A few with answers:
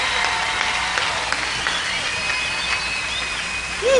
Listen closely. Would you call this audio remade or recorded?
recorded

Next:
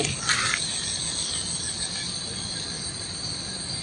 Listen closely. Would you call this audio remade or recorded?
recorded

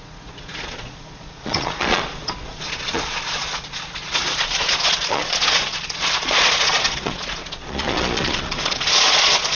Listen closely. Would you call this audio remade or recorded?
remade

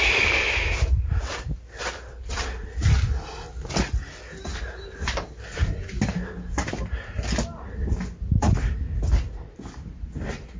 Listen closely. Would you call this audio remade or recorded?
recorded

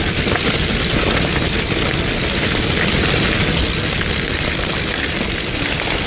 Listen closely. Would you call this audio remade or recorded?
recorded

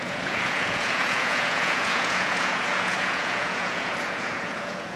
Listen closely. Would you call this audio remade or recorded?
remade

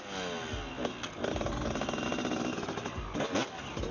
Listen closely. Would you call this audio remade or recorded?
recorded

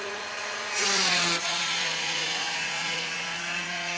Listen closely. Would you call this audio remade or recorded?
remade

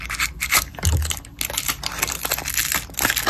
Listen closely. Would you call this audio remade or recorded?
recorded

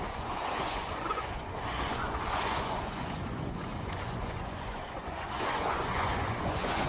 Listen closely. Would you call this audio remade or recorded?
remade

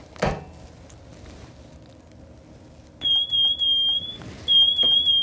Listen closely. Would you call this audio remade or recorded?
recorded